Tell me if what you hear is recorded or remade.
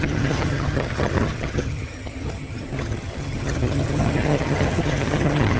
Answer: remade